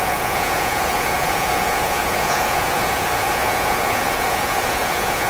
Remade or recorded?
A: remade